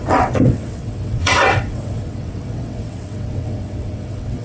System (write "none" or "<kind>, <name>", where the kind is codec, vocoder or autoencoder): vocoder, WaveNeXt